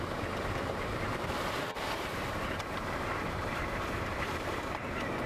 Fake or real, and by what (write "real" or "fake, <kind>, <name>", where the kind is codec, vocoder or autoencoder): fake, vocoder, BigVGAN v2